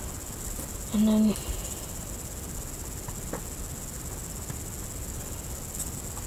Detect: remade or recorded recorded